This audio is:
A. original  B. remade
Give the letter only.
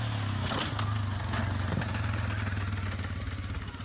A